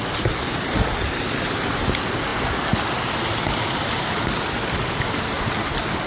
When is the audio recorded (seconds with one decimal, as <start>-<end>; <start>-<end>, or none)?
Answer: 0.0-6.1